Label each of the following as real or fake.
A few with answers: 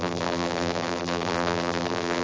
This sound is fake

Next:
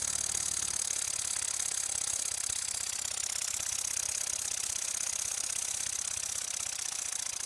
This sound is real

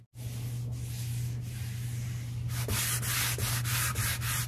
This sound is real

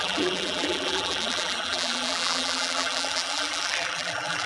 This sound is fake